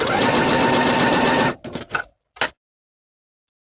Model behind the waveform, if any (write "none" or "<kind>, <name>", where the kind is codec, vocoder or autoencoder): none